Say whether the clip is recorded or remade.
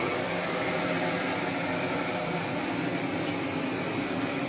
recorded